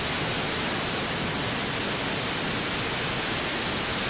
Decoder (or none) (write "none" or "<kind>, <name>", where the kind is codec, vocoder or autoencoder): none